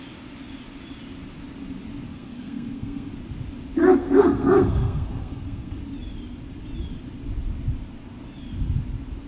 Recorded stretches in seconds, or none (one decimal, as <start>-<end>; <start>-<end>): 0.0-2.1; 3.1-3.8; 5.8-9.3